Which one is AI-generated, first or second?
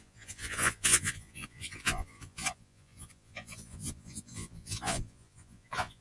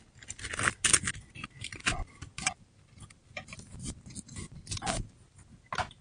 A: first